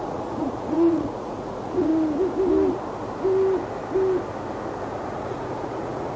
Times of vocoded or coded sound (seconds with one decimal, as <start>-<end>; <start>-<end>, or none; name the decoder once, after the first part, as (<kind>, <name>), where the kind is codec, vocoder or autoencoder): 0.0-1.9 (vocoder, Vocos); 4.8-6.2